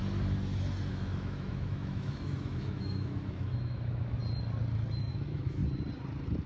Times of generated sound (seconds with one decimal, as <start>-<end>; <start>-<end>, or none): 0.9-4.2; 5.0-5.6